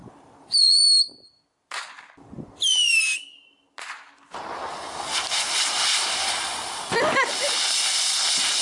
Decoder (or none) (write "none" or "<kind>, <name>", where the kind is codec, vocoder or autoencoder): none